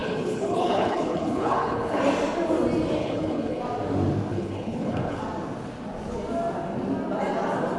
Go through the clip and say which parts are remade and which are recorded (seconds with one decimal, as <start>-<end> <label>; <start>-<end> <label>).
0.0-2.0 remade; 2.0-3.0 recorded; 3.0-3.6 remade; 3.6-4.3 recorded; 4.3-5.2 remade; 5.2-7.8 recorded